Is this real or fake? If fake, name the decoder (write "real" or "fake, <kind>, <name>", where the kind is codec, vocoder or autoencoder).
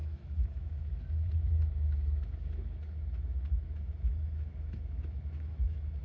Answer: fake, autoencoder, DAC-VAE